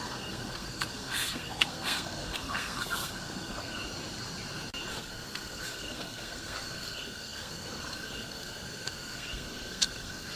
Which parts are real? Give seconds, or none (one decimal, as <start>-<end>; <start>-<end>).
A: 3.8-4.9